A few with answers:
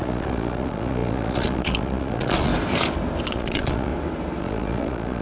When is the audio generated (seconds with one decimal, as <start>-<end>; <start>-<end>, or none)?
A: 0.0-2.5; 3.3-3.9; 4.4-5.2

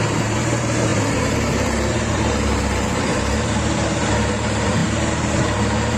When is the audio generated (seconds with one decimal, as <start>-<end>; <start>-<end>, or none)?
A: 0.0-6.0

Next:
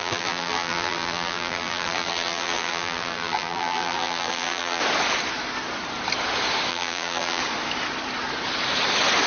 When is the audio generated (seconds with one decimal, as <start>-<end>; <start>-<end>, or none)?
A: 0.0-4.8; 6.7-7.4